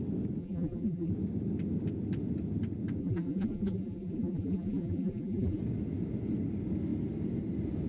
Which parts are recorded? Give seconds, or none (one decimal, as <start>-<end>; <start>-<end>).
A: 0.0-0.4; 1.1-3.0; 5.6-7.9